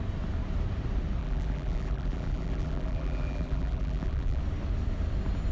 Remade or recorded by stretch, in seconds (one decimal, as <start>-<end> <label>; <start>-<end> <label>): 0.0-1.2 recorded; 1.2-4.4 remade; 4.4-5.5 recorded

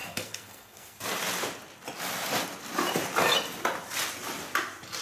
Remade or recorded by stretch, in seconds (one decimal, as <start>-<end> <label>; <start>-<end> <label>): 0.0-1.0 remade; 1.0-5.0 recorded

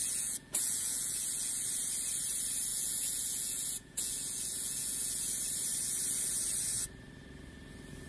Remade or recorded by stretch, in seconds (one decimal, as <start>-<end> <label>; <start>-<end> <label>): 0.0-1.5 remade; 1.5-2.7 recorded; 2.7-5.3 remade; 5.3-8.1 recorded

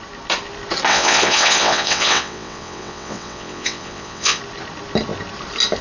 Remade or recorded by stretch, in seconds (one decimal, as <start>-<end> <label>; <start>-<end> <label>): 0.0-0.9 recorded; 0.9-4.4 remade; 4.4-5.8 recorded

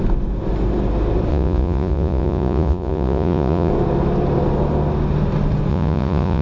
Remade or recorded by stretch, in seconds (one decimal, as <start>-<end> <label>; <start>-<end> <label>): 0.0-1.3 recorded; 1.3-3.7 remade; 3.7-5.7 recorded; 5.7-6.4 remade